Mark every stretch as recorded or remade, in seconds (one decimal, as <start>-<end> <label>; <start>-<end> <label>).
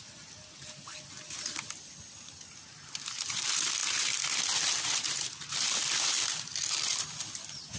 0.0-7.8 recorded